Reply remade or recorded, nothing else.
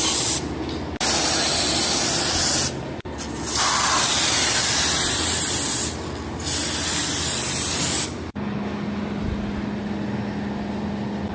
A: recorded